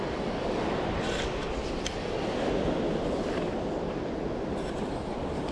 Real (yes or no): yes